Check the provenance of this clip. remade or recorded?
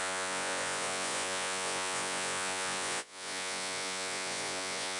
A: remade